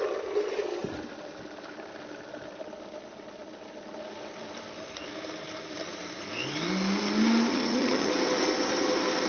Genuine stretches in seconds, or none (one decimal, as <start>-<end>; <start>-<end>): 0.0-7.5; 8.1-9.3